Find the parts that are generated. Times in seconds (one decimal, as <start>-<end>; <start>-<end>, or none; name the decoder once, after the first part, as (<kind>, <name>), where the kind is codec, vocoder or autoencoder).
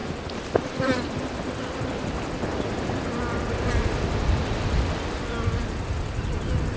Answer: 0.0-0.6 (vocoder, BigVGAN v2)